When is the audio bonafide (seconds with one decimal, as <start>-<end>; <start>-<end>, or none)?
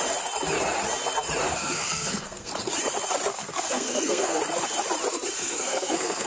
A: 0.0-1.5; 2.5-3.3; 4.4-5.4